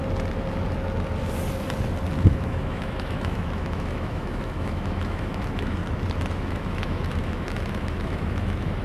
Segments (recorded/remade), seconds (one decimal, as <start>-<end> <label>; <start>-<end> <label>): 0.0-2.3 recorded; 2.3-5.8 remade; 5.8-6.3 recorded; 6.3-8.8 remade